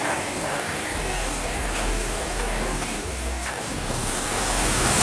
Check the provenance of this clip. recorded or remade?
remade